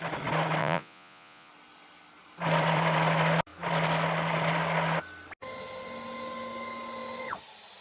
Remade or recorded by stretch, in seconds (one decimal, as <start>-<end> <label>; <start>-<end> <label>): 0.0-0.6 recorded; 0.6-1.5 remade; 1.5-7.8 recorded